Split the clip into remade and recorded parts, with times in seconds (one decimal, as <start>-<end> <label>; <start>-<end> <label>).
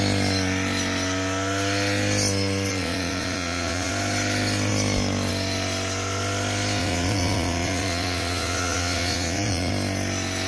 0.0-2.7 recorded; 2.7-3.9 remade; 3.9-6.8 recorded; 6.8-9.7 remade; 9.7-10.5 recorded